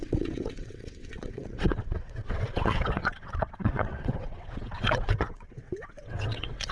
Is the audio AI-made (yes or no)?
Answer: yes